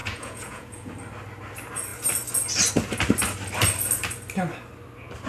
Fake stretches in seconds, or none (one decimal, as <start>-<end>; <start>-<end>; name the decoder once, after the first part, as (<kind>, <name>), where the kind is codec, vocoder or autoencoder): 0.0-0.9 (vocoder, Vocos)